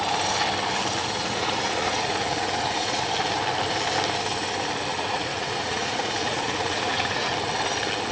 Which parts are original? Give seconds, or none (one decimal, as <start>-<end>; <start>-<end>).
0.0-1.0; 3.0-4.9; 7.3-8.1